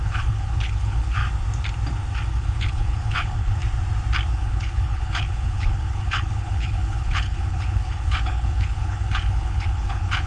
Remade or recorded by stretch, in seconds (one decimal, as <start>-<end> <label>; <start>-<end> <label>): 0.0-1.2 remade; 1.2-2.3 recorded; 2.3-3.6 remade; 3.6-4.3 recorded; 4.3-10.3 remade